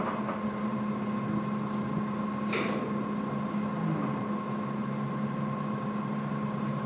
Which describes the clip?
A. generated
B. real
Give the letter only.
B